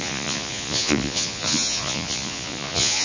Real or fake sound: fake